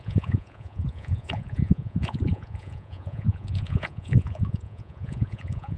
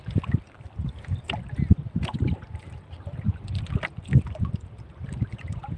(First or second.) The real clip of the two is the second